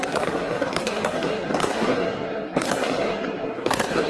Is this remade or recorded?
remade